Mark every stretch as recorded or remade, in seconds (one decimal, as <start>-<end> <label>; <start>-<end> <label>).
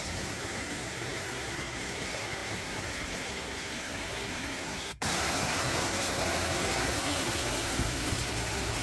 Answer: 0.0-8.8 remade